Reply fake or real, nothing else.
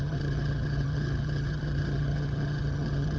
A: fake